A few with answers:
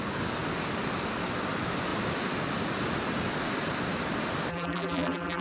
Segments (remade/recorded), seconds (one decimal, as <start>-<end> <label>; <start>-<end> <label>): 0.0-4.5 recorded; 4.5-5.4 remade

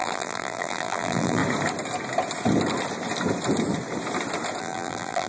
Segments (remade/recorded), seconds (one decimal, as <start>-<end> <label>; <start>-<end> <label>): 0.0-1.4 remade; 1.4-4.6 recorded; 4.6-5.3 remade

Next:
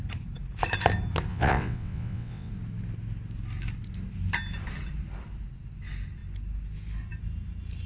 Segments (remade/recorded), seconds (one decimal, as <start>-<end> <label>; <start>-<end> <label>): 0.0-1.3 recorded; 1.3-2.5 remade; 2.5-7.9 recorded